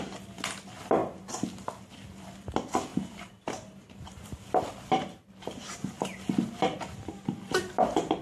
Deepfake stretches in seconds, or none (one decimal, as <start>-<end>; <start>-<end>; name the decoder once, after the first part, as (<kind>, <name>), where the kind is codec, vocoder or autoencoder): none